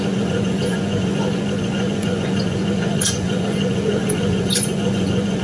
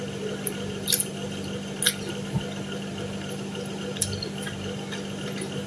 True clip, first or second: second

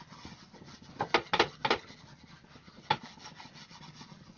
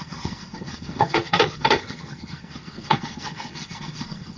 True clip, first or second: first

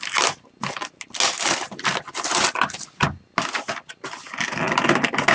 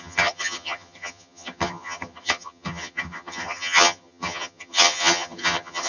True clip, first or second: first